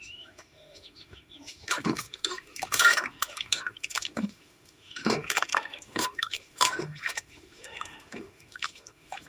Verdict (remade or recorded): remade